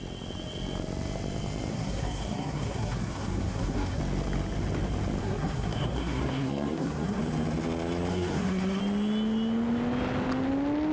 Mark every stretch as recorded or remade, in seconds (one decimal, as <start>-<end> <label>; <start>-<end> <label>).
0.0-1.7 recorded; 1.7-4.0 remade; 4.0-5.2 recorded; 5.2-7.2 remade; 7.2-8.1 recorded; 8.1-8.8 remade; 8.8-10.9 recorded